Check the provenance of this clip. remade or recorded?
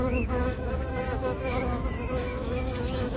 remade